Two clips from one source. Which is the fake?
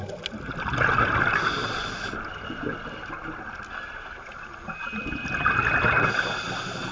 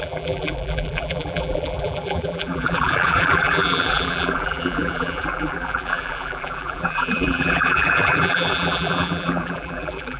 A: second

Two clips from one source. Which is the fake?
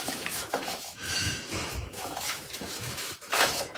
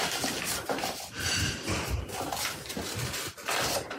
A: first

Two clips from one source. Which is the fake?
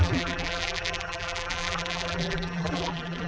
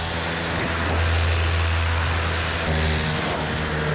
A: first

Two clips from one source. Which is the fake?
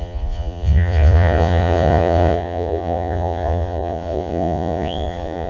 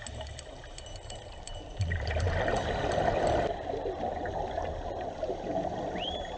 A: first